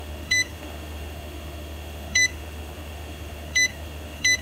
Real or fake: fake